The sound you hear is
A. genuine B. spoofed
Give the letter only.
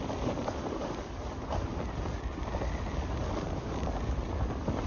A